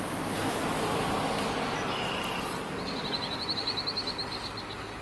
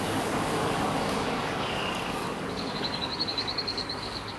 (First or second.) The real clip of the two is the first